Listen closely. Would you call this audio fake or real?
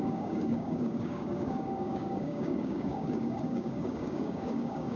fake